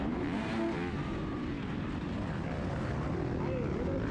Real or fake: real